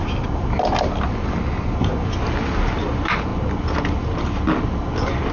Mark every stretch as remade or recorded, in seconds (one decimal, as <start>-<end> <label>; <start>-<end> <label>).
0.0-5.3 recorded